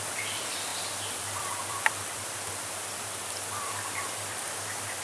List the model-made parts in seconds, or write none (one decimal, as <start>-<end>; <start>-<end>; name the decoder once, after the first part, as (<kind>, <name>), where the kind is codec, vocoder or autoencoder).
0.0-0.7 (vocoder, BigVGAN v2); 1.4-5.0